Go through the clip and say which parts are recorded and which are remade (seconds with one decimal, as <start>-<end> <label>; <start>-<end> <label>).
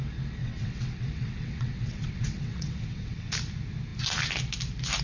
0.0-0.4 recorded; 0.4-3.3 remade; 3.3-5.0 recorded